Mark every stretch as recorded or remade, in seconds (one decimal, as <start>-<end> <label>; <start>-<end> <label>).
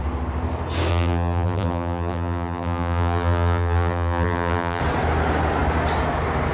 0.0-0.9 recorded; 0.9-4.8 remade; 4.8-6.5 recorded